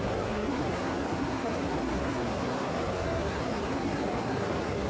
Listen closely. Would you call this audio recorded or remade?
remade